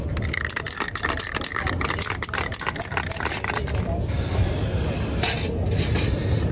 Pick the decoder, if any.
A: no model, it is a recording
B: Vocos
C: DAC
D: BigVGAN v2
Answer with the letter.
A